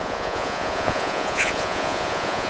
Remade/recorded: remade